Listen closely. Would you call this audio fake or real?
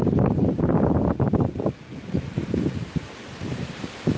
fake